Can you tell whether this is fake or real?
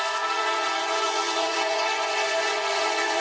fake